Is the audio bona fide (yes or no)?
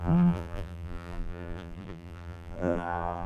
no